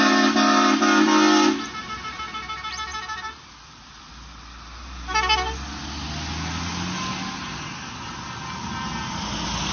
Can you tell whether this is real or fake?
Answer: real